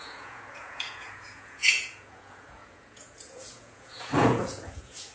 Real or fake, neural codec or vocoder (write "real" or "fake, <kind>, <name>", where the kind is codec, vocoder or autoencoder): fake, vocoder, Vocos